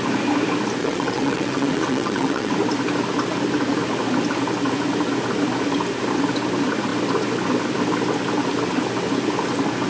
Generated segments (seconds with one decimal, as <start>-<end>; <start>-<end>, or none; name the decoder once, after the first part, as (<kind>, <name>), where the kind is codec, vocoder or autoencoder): 0.8-2.5 (vocoder, WaveNeXt)